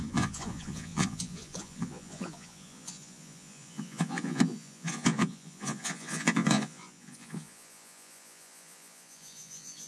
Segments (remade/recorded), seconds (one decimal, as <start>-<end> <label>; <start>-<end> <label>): 0.0-9.9 remade